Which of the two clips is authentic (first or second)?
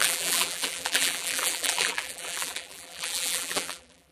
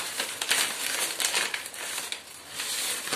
second